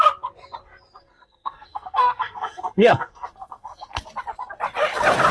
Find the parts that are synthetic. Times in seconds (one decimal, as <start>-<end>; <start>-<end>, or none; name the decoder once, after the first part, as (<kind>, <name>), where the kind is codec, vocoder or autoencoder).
1.0-4.0 (codec, SNAC)

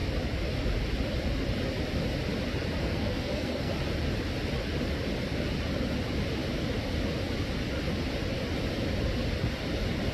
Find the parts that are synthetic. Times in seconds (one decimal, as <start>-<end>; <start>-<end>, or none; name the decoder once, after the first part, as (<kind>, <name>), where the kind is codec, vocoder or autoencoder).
2.8-3.7 (codec, SNAC)

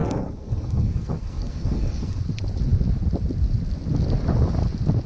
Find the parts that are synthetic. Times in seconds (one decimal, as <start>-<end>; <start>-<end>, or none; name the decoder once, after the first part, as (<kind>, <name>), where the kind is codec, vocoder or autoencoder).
0.0-2.2 (codec, SNAC)